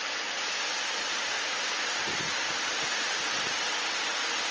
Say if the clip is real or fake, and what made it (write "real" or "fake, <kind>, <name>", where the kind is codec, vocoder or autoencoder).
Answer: real